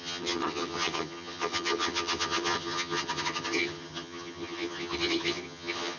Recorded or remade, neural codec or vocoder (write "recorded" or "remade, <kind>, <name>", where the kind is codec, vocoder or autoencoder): remade, vocoder, HiFi-GAN